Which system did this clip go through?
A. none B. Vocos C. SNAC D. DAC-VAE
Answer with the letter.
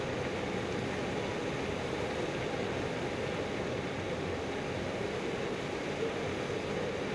A